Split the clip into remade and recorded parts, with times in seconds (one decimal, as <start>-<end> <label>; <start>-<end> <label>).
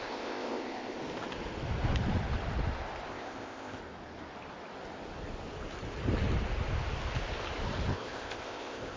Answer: 0.0-1.0 remade; 1.0-3.1 recorded; 3.1-3.8 remade; 3.8-7.9 recorded; 7.9-9.0 remade